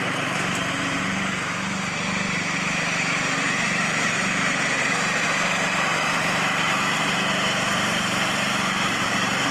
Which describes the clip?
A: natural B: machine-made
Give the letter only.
B